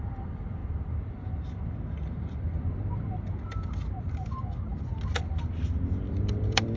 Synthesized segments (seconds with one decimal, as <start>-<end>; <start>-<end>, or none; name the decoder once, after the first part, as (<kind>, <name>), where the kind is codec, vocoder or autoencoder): 0.0-4.7 (vocoder, BigVGAN v2); 6.1-6.8